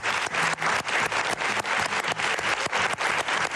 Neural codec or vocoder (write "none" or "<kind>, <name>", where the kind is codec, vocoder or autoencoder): none